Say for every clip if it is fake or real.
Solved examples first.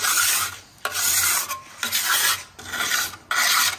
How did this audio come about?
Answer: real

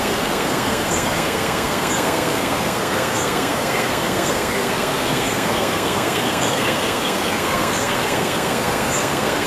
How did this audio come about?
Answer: fake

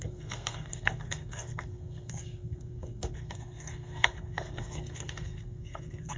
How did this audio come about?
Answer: fake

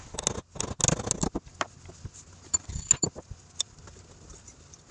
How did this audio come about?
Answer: real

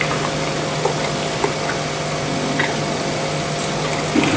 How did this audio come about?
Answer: real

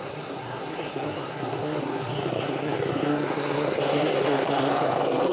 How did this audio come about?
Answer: fake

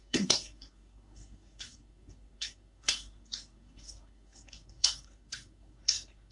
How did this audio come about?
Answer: fake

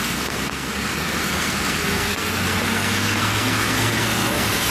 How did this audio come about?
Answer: fake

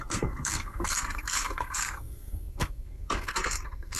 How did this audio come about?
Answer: fake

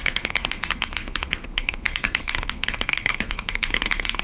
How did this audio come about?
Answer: fake